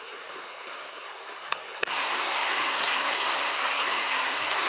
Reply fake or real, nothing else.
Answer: fake